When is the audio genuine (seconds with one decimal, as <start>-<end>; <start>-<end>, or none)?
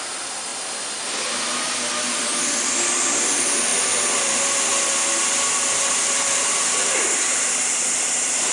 0.0-8.5